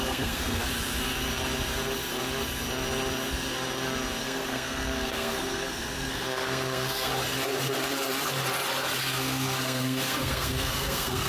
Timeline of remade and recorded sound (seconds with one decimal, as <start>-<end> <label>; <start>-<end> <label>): 0.0-0.6 remade; 0.6-4.2 recorded; 4.2-7.1 remade; 7.1-9.0 recorded; 9.0-11.3 remade